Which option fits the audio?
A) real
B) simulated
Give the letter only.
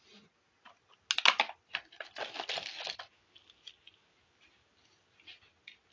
A